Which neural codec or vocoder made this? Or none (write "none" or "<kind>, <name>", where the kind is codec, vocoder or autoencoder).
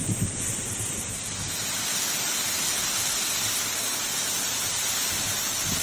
none